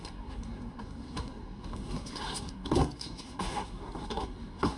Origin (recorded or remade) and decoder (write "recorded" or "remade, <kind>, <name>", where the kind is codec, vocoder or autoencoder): remade, codec, SNAC